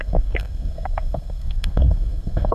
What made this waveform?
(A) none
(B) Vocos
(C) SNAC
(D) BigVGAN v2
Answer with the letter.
C